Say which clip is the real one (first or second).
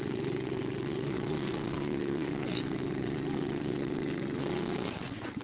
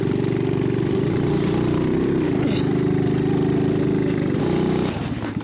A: second